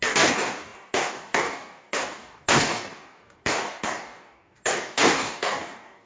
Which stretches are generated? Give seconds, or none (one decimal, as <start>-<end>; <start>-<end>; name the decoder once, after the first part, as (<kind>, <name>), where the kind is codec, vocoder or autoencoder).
0.0-6.1 (codec, DAC)